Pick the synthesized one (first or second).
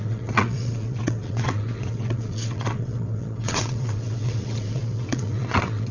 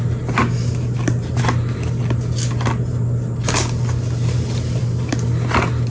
first